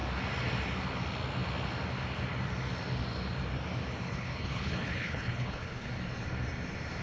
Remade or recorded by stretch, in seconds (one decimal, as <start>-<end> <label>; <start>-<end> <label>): 0.0-4.1 recorded; 4.1-5.9 remade; 5.9-7.0 recorded